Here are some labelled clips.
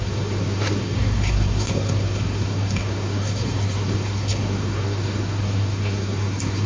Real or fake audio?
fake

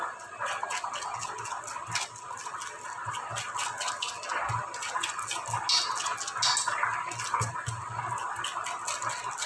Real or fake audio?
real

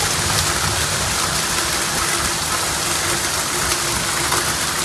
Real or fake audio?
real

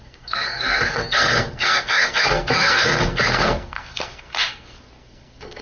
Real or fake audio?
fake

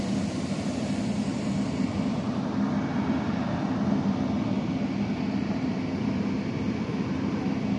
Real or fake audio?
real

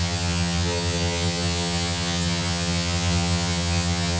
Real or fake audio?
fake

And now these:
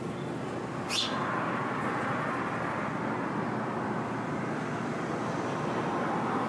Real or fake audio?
real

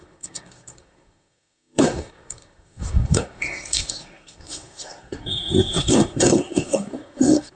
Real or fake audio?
fake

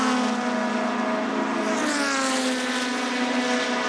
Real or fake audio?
real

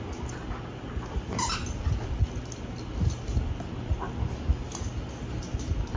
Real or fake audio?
real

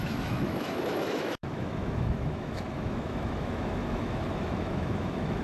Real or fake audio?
fake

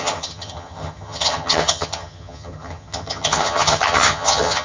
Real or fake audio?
fake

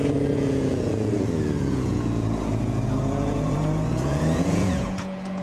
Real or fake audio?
fake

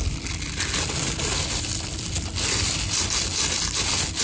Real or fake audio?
real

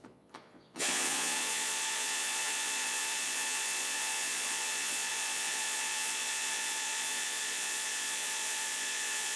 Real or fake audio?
fake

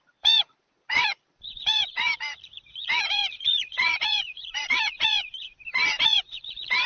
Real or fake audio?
fake